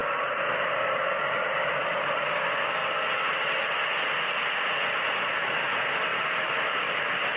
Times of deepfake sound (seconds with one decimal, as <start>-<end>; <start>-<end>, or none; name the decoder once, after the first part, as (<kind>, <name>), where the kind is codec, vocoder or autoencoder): 0.0-1.8 (vocoder, BigVGAN v2); 2.8-4.1; 6.1-6.8